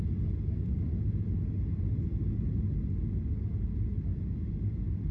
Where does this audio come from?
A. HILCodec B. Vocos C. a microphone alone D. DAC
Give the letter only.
C